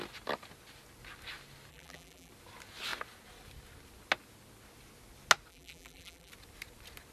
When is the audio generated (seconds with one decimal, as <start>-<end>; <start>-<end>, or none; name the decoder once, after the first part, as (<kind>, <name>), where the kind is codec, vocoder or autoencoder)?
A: 1.7-2.3 (vocoder, BigVGAN v2); 5.5-6.3